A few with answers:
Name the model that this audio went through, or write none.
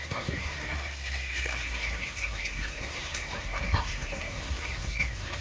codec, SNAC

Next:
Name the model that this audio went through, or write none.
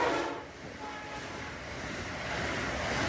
none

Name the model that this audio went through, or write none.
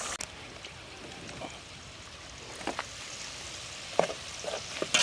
none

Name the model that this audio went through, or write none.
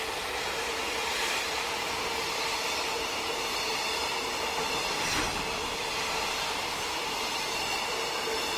none